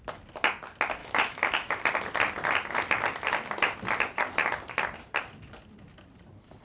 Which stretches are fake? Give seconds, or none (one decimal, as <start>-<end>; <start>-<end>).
1.0-1.8

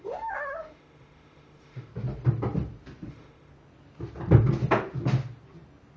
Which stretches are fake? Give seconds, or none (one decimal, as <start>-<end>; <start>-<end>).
0.0-1.9; 3.1-3.5

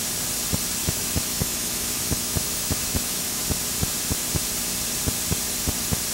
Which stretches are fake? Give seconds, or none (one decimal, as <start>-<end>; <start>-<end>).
0.8-3.4

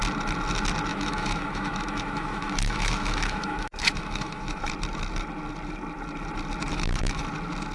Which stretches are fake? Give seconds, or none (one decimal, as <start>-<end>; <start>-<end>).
0.9-4.6; 6.7-7.2

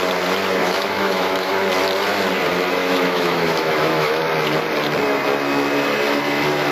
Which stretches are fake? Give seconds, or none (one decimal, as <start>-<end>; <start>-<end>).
0.6-1.5; 2.8-4.2

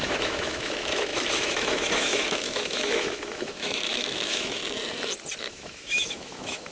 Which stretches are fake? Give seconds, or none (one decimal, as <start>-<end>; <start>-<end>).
0.0-4.6; 5.4-6.7

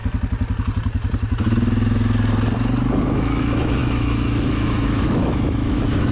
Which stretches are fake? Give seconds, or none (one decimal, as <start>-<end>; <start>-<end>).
3.0-6.1

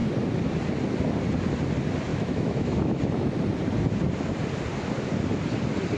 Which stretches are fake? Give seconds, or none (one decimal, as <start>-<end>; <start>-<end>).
2.1-3.3